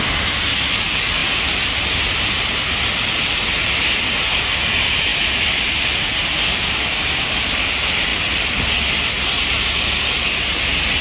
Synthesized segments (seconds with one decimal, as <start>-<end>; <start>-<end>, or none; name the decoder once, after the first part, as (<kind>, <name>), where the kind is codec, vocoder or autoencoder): none